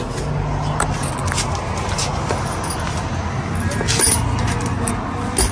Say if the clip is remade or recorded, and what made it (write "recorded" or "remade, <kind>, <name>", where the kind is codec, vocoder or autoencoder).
recorded